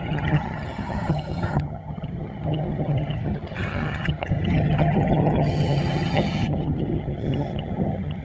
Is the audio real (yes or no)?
no